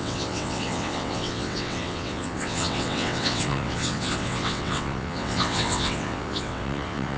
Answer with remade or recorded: remade